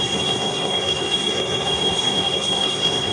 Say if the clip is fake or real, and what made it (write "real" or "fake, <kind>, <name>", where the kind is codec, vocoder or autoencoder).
fake, codec, SNAC